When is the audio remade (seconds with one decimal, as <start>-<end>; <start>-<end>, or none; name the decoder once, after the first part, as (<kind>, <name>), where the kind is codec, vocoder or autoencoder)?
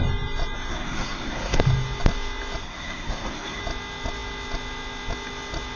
0.7-1.6 (codec, SNAC); 2.6-3.6